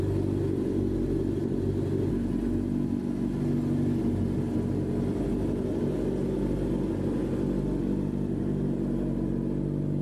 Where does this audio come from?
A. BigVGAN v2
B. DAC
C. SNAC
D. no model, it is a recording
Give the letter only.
D